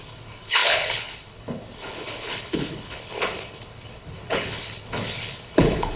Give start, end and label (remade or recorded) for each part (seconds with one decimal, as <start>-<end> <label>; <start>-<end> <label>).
0.0-6.0 remade